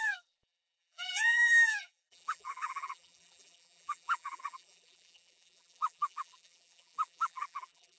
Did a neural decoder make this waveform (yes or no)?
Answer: yes